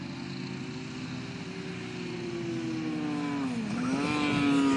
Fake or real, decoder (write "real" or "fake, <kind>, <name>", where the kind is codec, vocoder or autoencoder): real